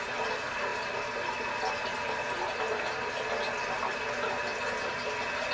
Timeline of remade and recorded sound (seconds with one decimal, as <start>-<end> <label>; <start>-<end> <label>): 0.0-5.5 recorded